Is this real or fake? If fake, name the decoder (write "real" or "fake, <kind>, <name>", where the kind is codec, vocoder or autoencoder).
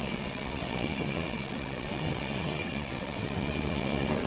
fake, vocoder, WaveNeXt